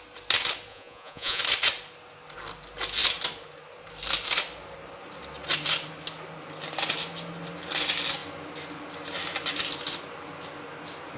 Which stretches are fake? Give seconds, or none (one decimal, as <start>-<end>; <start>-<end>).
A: 0.7-1.4